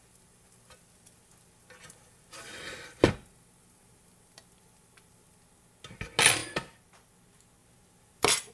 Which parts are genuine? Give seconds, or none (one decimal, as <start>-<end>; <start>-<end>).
0.0-6.4; 7.1-7.6